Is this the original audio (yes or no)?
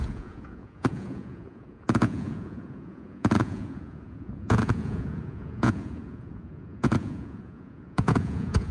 no